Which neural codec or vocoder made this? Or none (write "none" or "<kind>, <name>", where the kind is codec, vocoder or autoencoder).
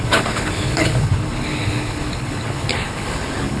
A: codec, HILCodec